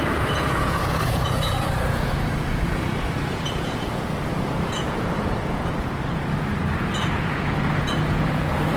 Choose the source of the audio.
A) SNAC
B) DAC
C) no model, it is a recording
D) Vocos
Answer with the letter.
D